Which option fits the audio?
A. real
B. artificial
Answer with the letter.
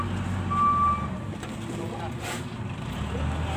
A